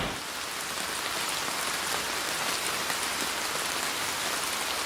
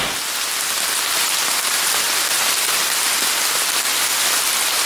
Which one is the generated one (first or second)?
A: second